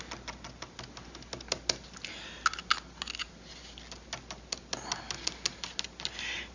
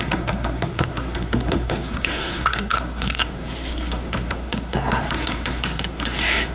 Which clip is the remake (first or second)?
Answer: second